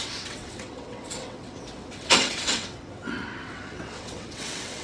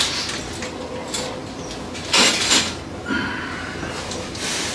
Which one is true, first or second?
second